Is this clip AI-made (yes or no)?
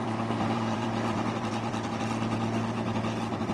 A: yes